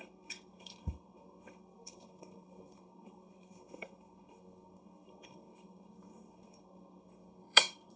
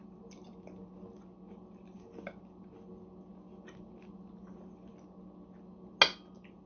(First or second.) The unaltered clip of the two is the second